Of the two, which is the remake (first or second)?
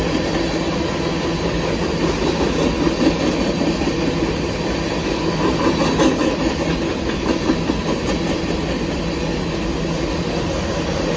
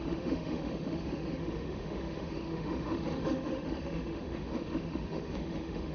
second